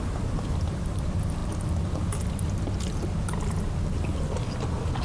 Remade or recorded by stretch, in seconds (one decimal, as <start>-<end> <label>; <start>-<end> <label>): 0.0-5.0 recorded